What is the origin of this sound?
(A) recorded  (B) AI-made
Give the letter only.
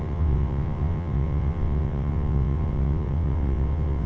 B